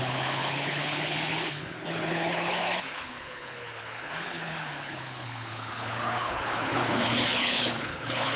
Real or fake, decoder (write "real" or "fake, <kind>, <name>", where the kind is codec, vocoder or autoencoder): fake, codec, HILCodec